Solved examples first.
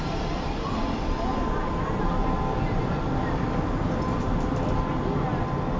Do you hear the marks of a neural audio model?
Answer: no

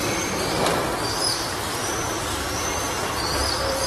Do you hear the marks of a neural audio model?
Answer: yes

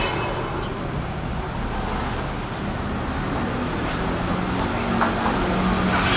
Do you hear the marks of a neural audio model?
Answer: no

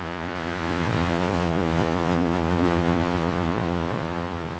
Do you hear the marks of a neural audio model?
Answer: yes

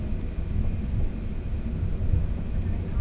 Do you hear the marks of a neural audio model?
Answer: no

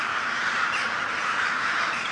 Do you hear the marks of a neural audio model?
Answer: yes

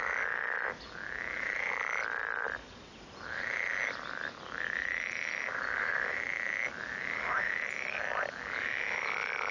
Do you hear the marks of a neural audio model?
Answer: no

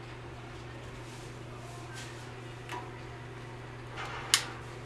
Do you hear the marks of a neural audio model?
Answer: no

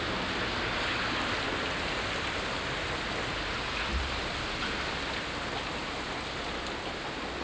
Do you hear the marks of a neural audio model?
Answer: no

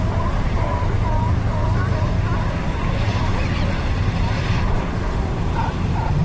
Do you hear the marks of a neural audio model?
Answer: yes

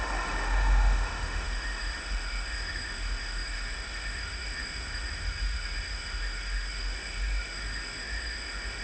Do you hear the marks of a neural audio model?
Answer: yes